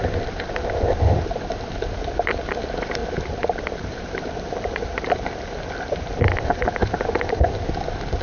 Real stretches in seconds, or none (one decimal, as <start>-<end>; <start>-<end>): 0.0-3.0; 5.3-8.2